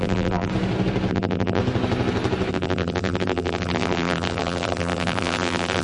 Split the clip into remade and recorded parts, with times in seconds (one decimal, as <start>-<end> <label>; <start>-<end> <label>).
0.0-0.5 remade; 0.5-1.1 recorded; 1.1-1.6 remade; 1.6-2.5 recorded; 2.5-5.8 remade